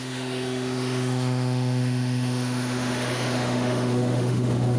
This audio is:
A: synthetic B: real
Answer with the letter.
A